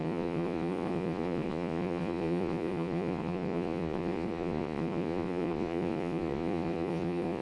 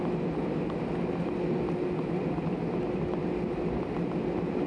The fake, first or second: first